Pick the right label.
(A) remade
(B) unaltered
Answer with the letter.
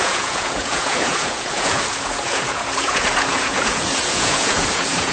A